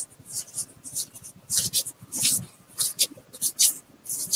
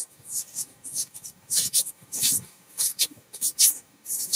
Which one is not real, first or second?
second